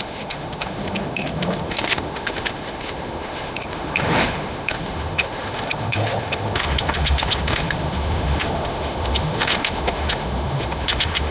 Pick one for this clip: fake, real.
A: fake